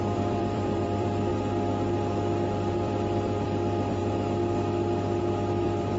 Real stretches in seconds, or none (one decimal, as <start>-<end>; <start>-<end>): 1.3-2.7; 4.0-5.2